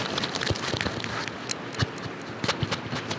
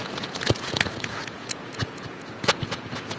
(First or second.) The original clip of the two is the first